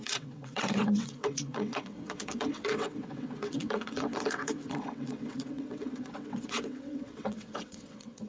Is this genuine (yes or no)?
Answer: no